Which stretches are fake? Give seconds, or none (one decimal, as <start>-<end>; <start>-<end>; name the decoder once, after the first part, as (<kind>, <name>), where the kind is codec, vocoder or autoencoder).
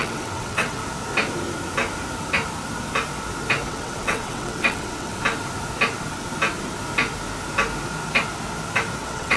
0.0-0.8 (vocoder, WaveNeXt); 3.7-5.1; 9.0-9.4